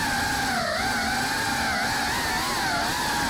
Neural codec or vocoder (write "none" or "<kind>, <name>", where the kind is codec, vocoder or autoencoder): none